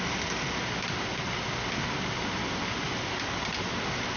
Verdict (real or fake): real